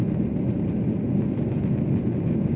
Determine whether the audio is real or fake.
real